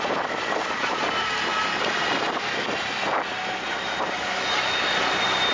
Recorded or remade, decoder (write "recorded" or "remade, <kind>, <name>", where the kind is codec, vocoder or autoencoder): recorded